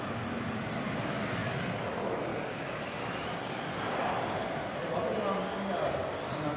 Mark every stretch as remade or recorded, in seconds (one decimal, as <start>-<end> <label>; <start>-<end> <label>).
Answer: 0.0-2.3 recorded; 2.3-3.6 remade; 3.6-6.6 recorded